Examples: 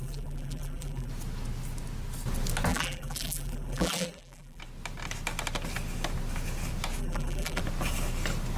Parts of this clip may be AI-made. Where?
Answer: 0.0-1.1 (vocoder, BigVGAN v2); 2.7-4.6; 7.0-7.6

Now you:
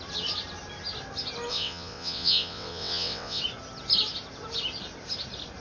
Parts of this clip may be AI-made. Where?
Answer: 1.5-3.4 (vocoder, WaveNeXt)

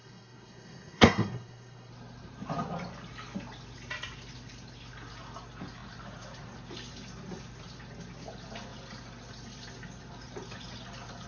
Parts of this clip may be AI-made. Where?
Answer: 0.0-1.9 (codec, SNAC)

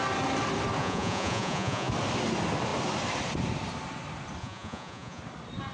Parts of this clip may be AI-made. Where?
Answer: 0.8-1.9 (vocoder, Vocos); 4.4-5.2

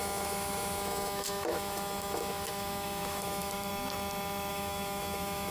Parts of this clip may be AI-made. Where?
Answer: 0.0-3.7 (autoencoder, DAC-VAE); 4.5-5.5